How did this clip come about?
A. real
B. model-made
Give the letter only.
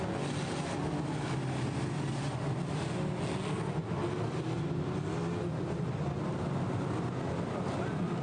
A